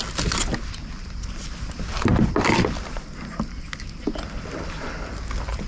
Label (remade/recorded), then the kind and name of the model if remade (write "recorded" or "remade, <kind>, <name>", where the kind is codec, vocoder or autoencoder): recorded